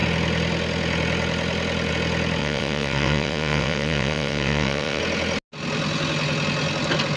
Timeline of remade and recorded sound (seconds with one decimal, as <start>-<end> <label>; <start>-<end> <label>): 0.0-2.4 recorded; 2.4-5.0 remade; 5.0-7.2 recorded